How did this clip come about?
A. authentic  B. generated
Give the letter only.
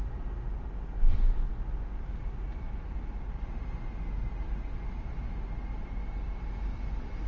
A